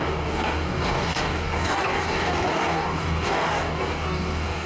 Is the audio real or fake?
fake